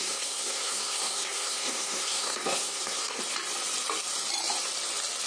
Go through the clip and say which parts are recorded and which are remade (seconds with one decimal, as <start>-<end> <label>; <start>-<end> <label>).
0.0-3.2 remade; 3.2-5.3 recorded